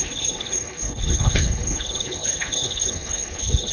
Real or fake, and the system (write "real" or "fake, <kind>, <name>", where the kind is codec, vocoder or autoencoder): fake, codec, HILCodec